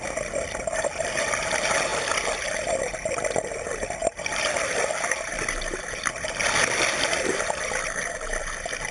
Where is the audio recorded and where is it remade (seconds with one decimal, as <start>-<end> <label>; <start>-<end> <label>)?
0.0-8.9 recorded